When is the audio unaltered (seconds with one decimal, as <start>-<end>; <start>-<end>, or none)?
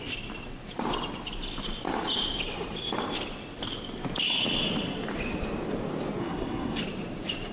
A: 0.0-6.2; 6.8-7.5